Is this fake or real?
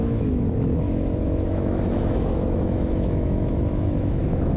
fake